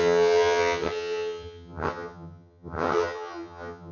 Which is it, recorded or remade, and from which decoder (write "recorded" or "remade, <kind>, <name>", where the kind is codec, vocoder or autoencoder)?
remade, vocoder, HiFi-GAN